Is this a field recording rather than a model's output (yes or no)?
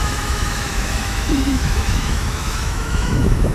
no